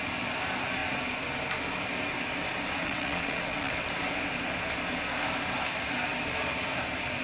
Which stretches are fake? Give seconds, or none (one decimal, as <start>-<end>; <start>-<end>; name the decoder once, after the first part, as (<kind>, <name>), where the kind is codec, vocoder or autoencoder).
2.8-3.9 (vocoder, WaveNeXt)